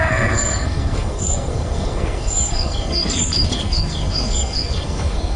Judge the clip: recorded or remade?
remade